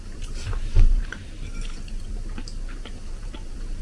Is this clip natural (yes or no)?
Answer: no